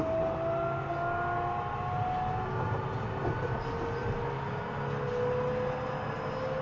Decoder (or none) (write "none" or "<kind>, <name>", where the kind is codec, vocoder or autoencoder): none